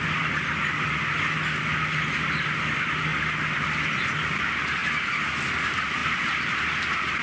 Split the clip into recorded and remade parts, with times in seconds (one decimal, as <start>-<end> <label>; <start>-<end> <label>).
0.0-7.2 recorded